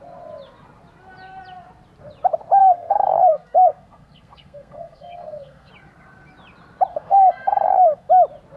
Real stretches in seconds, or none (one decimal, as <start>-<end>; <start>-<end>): 0.0-2.6; 5.7-6.9; 8.1-8.6